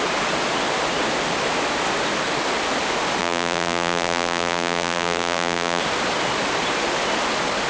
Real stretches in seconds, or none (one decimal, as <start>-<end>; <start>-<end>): 0.0-3.2; 5.8-7.7

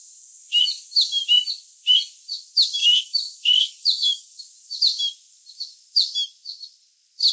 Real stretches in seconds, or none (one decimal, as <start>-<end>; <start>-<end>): 0.0-2.8; 4.4-7.3

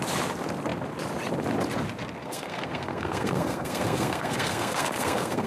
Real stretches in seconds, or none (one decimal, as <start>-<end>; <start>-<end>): 0.0-2.2

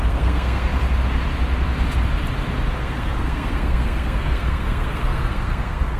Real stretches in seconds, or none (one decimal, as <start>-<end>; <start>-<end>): 0.7-2.8

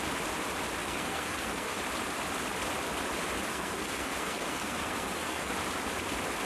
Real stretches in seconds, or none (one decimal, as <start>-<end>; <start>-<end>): 0.0-0.8; 1.8-3.5; 5.5-6.5

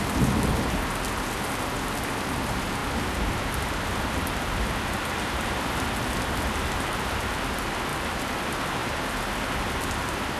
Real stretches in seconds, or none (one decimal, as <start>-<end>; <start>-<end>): 0.0-2.8; 5.1-7.9; 8.4-10.4